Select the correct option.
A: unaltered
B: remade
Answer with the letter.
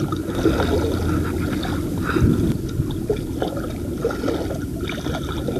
A